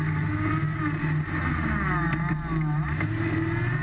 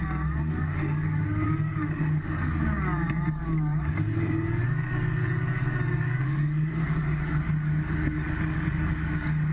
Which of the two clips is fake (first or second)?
second